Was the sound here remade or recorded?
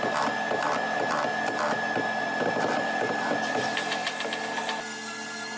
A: recorded